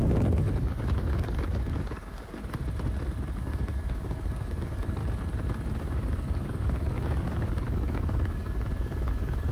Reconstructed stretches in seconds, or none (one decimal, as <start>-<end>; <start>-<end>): 0.0-2.3; 3.4-5.0; 5.8-9.5